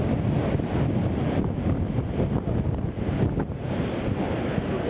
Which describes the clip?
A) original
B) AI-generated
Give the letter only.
A